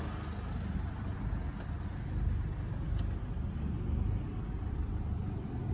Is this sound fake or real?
real